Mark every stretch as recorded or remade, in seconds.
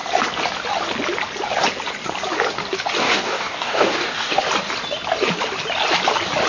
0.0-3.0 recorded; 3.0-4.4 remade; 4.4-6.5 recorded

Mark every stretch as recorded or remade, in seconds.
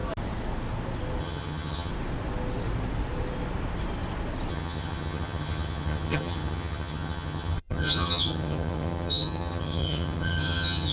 0.0-1.2 recorded; 1.2-1.9 remade; 1.9-4.5 recorded; 4.5-10.9 remade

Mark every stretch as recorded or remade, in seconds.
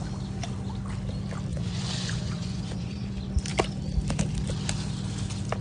0.0-1.5 recorded; 1.5-3.1 remade; 3.1-5.6 recorded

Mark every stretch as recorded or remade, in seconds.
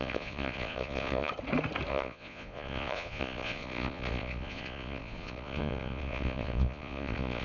0.0-1.3 remade; 1.3-1.9 recorded; 1.9-7.4 remade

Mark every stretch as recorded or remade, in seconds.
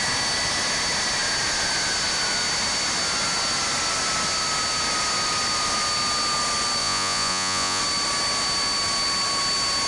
0.0-6.8 recorded; 6.8-7.8 remade; 7.8-9.9 recorded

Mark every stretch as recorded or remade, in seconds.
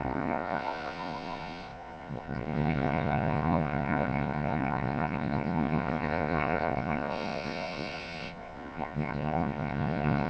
0.0-10.3 remade